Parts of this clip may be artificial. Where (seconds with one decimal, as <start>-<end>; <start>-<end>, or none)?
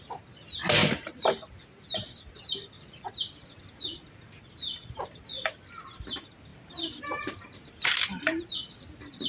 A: 5.3-5.8